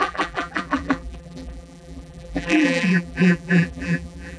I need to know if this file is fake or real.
fake